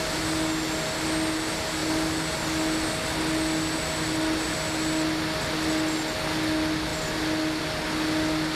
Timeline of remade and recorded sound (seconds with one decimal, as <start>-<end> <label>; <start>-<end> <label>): 0.0-8.6 recorded